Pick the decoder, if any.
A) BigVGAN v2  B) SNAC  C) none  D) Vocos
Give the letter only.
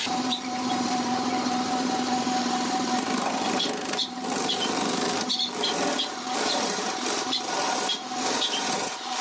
A